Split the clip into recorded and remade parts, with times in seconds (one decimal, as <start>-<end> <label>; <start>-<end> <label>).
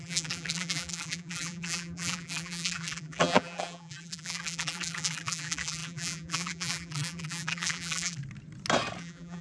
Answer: 0.0-8.2 remade; 8.2-9.0 recorded; 9.0-9.4 remade